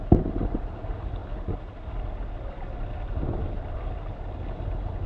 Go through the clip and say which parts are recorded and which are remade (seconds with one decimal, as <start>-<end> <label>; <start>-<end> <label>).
0.0-1.2 recorded; 1.2-3.8 remade; 3.8-5.1 recorded